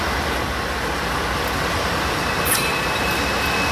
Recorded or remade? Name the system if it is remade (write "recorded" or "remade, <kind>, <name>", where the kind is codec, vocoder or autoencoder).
recorded